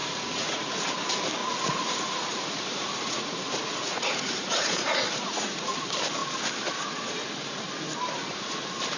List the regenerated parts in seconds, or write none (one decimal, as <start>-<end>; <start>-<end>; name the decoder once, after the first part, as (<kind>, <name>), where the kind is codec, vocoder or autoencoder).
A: 0.0-0.9 (vocoder, Vocos); 1.4-5.8